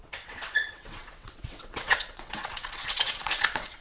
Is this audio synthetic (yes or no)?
yes